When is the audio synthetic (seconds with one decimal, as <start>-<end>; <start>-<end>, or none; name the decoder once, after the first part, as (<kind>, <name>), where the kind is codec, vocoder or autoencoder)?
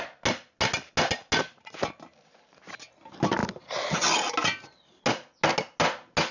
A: none